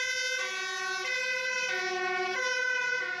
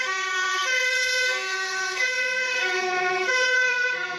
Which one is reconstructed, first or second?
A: second